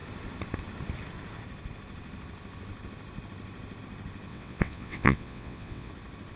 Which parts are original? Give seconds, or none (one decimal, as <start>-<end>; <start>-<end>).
0.0-4.3; 5.9-6.4